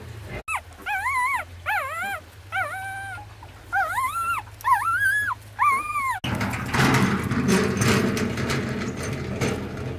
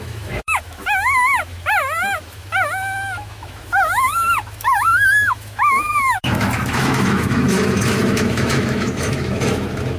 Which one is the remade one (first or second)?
second